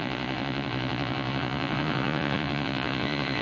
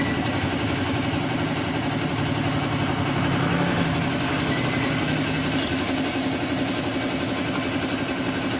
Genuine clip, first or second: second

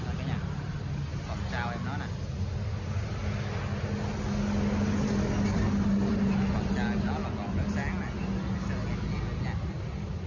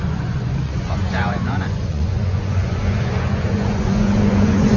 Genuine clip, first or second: first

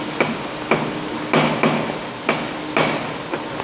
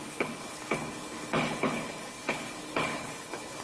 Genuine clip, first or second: first